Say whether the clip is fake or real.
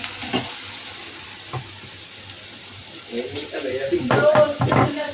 real